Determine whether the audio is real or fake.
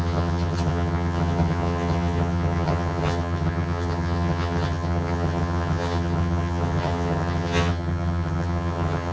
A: fake